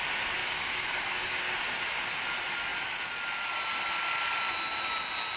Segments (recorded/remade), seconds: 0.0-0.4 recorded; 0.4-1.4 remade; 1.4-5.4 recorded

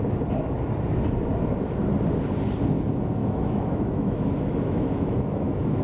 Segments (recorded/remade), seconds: 0.0-3.2 recorded; 3.2-5.8 remade

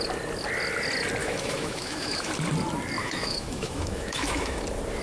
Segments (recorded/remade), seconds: 0.0-1.2 recorded; 1.2-2.3 remade; 2.3-3.0 recorded; 3.0-4.6 remade; 4.6-5.0 recorded